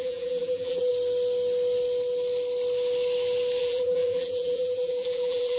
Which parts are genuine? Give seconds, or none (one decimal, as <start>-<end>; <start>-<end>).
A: 0.9-3.6

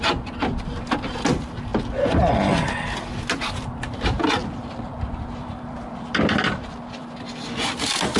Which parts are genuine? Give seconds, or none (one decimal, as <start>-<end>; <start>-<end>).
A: 1.7-3.5

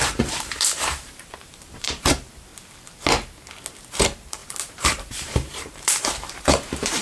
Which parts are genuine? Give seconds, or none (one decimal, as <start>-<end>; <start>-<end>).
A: 2.5-3.9

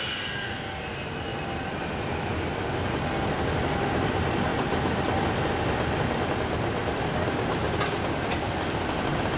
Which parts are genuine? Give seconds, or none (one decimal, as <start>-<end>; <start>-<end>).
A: 0.0-1.3; 3.3-4.5; 5.1-6.8

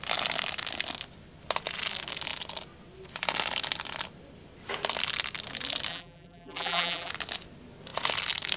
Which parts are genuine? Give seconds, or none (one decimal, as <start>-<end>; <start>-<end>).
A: 0.0-5.9; 7.1-8.6

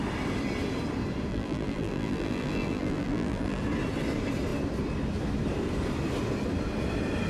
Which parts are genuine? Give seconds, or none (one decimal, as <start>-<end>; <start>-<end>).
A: 0.0-1.3; 3.6-7.3

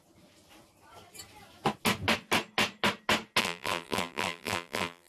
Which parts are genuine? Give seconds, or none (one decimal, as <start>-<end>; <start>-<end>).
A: 0.0-3.4